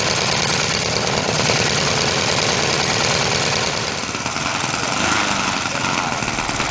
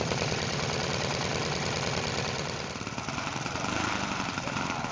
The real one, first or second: first